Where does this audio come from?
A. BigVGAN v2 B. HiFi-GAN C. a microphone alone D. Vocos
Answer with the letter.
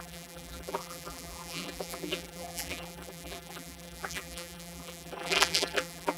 A